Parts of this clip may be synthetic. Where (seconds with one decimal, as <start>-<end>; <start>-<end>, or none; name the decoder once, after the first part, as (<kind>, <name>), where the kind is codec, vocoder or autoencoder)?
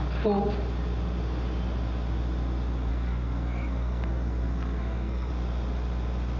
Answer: 2.9-5.3 (codec, SNAC)